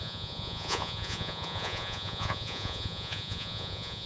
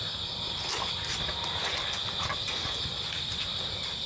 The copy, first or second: first